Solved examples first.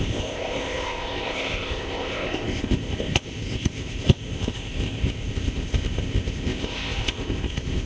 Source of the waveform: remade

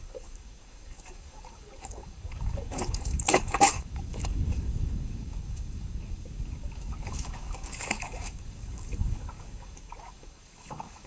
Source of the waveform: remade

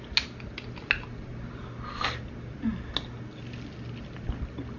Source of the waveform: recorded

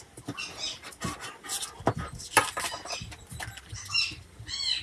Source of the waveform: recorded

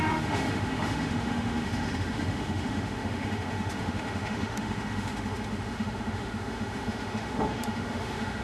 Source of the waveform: remade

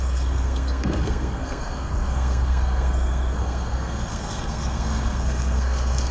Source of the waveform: remade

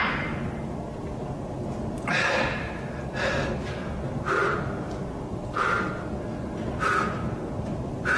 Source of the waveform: recorded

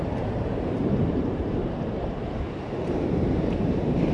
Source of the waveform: remade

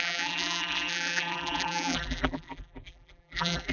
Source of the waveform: remade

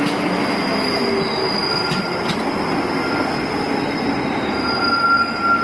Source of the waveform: recorded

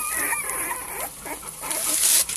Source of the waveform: remade